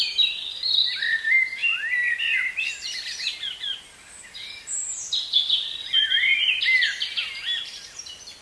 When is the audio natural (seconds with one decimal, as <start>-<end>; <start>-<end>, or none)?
0.0-8.4